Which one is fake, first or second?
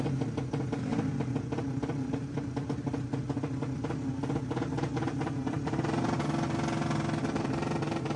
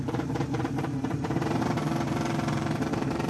second